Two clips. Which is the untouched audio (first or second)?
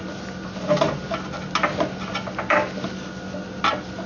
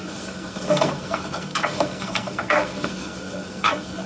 first